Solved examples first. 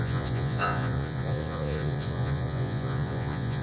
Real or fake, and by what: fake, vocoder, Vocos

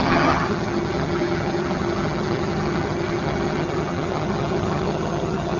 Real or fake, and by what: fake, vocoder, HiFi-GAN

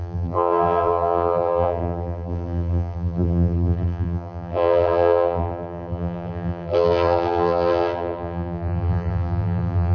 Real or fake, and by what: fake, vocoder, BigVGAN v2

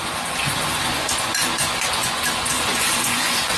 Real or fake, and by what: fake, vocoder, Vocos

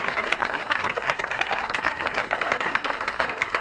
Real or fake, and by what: fake, codec, SNAC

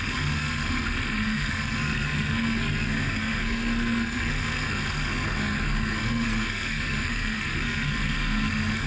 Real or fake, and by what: fake, codec, SNAC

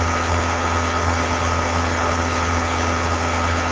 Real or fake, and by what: fake, codec, HILCodec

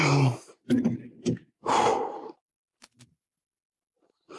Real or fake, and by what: real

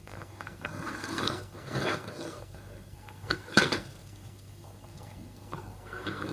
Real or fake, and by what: fake, codec, SNAC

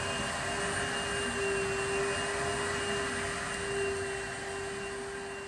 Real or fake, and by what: real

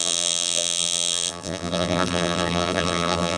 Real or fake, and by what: fake, vocoder, BigVGAN v2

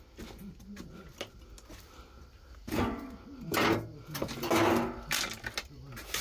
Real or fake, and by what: real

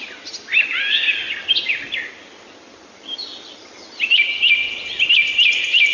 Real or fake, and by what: real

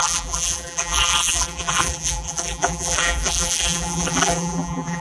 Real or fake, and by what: fake, vocoder, BigVGAN v2